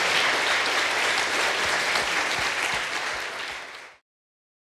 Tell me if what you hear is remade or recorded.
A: recorded